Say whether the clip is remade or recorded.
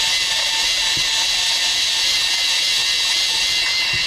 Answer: recorded